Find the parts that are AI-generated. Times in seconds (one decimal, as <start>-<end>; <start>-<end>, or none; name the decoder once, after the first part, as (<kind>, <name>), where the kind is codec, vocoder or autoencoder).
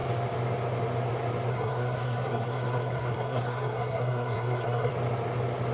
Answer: 1.5-4.9 (codec, SNAC)